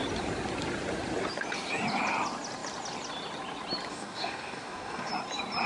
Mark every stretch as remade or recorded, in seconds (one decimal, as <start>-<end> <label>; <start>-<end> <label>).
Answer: 0.0-3.9 recorded; 3.9-5.1 remade; 5.1-5.7 recorded